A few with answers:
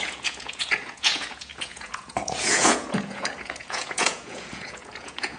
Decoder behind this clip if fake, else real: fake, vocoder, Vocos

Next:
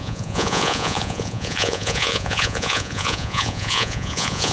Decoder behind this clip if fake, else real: fake, vocoder, Vocos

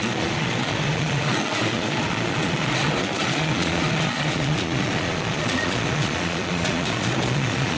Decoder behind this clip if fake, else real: fake, vocoder, Vocos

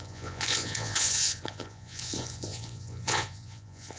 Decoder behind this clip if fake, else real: fake, vocoder, Vocos